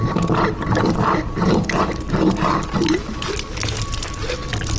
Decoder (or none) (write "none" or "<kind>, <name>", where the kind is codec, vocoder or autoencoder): none